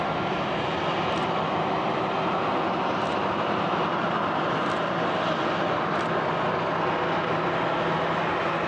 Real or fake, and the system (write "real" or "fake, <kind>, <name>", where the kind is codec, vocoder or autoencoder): real